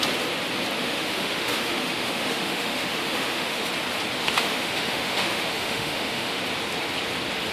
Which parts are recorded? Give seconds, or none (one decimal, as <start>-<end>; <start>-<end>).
0.0-0.8; 3.7-4.2; 6.4-7.5